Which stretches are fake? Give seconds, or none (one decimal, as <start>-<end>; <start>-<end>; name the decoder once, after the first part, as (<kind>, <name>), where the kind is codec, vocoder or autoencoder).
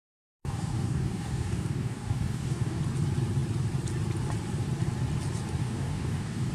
0.0-2.8 (codec, DAC); 5.6-6.5